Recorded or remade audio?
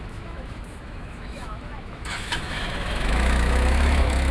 remade